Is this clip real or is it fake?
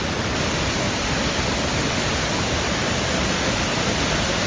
real